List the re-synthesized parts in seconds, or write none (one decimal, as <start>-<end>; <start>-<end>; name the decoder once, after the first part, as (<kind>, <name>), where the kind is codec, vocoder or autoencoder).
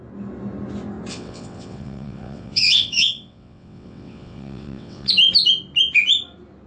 1.1-5.1 (vocoder, WaveNeXt)